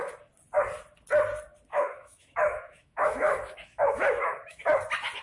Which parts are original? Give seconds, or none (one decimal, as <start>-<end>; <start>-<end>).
0.0-1.7; 4.8-5.2